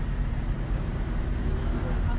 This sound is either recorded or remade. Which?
remade